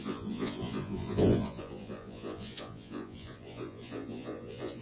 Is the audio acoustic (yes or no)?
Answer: no